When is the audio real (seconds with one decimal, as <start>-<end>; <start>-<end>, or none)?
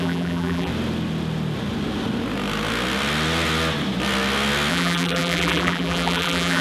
0.7-4.7